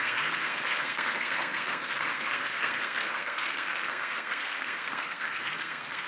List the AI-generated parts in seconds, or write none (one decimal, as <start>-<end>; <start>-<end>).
0.0-6.1